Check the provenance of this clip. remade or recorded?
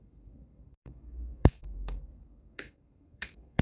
remade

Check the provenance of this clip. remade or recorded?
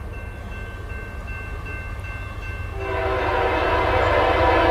recorded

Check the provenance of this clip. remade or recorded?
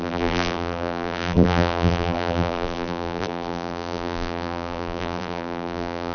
remade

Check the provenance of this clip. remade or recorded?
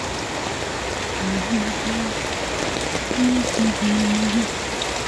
recorded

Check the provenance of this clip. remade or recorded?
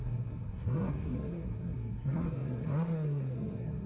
remade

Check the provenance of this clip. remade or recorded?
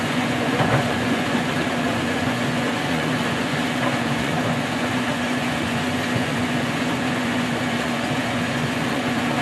remade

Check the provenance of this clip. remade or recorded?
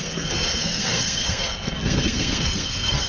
remade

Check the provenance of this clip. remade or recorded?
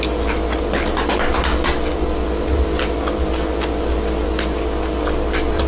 recorded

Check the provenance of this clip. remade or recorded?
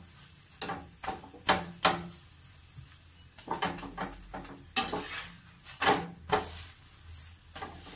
recorded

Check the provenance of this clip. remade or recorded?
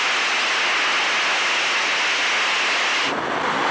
recorded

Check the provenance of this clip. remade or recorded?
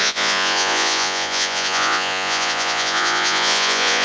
remade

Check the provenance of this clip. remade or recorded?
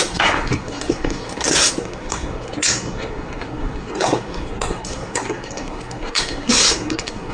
remade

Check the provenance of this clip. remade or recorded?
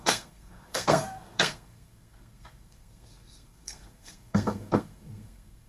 remade